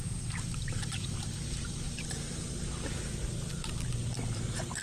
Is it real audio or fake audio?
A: fake